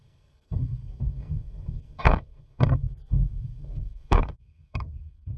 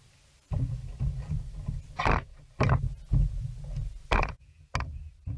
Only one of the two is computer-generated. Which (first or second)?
first